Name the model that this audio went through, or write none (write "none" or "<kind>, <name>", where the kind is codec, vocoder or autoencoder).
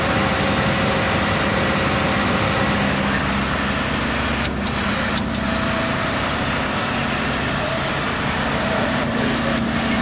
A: none